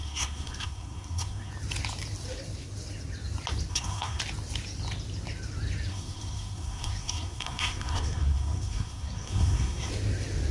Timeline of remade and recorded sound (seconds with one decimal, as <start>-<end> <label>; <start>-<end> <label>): 0.0-1.5 remade; 1.5-3.7 recorded; 3.7-4.2 remade; 4.2-5.9 recorded; 5.9-9.9 remade; 9.9-10.5 recorded

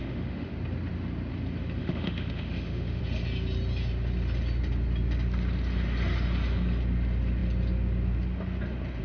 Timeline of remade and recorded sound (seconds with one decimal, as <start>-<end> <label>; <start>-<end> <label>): 0.0-0.5 remade; 0.5-1.8 recorded; 1.8-3.0 remade; 3.0-9.0 recorded

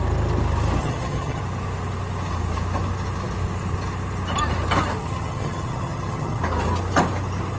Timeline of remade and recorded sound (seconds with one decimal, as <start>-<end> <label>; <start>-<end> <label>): 0.0-0.8 recorded; 0.8-1.4 remade; 1.4-5.0 recorded; 5.0-6.4 remade; 6.4-7.6 recorded

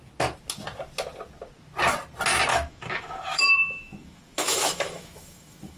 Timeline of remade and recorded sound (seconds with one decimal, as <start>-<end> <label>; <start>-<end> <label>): 0.0-2.5 recorded; 2.5-5.8 remade

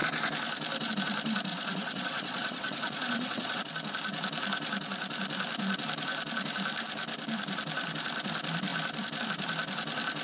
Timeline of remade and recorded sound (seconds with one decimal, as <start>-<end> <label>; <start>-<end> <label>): 0.0-1.5 recorded; 1.5-3.6 remade; 3.6-10.2 recorded

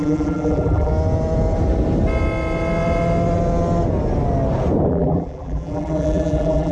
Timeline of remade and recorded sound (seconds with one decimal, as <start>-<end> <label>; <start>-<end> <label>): 0.0-0.9 remade; 0.9-4.9 recorded; 4.9-6.7 remade